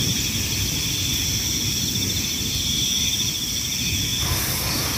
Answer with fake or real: real